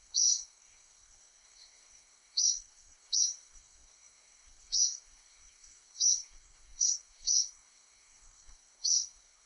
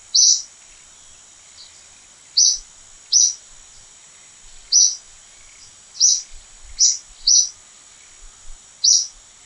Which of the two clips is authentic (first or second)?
second